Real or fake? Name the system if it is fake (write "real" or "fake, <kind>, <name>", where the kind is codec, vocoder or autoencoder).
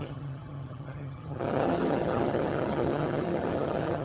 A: fake, vocoder, HiFi-GAN